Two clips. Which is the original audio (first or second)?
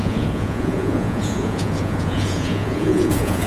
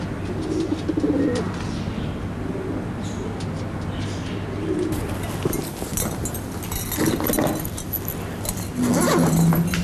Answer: second